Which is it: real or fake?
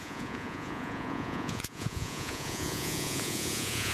fake